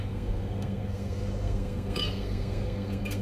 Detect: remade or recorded remade